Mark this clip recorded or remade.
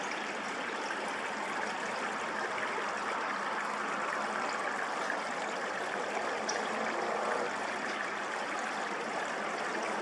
recorded